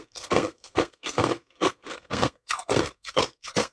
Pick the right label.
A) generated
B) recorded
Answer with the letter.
A